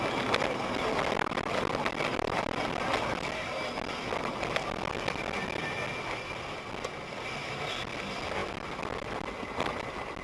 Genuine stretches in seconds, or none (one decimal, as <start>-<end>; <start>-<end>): 0.0-10.2